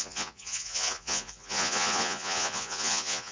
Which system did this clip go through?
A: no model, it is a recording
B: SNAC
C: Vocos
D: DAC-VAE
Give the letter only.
C